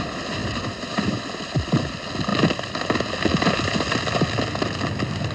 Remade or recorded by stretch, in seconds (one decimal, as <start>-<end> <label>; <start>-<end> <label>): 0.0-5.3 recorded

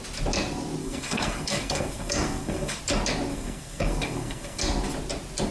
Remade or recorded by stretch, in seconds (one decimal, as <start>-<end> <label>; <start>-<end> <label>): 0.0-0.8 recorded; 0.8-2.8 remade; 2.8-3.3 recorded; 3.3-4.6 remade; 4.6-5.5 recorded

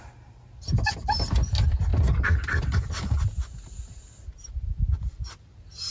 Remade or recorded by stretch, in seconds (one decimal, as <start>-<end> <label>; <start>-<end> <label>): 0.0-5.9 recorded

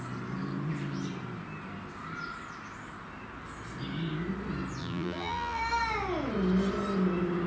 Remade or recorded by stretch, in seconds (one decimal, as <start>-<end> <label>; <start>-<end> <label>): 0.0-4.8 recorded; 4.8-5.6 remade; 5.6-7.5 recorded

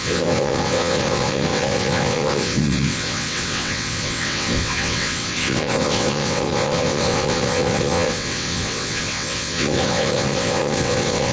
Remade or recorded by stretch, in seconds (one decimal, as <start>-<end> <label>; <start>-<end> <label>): 0.0-11.3 remade

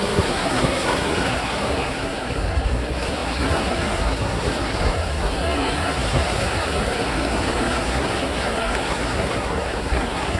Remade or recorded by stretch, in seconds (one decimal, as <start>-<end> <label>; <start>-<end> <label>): 0.0-10.4 remade

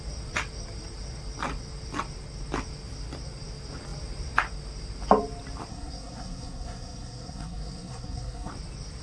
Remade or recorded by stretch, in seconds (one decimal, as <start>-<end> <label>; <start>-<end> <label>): 0.0-5.7 recorded; 5.7-8.5 remade; 8.5-9.0 recorded